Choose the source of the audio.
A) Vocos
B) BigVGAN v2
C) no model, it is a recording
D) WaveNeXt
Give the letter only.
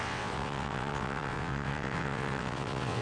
D